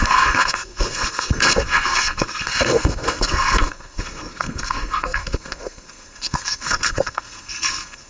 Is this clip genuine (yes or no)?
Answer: no